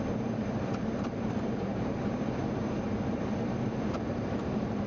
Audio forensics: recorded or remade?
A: remade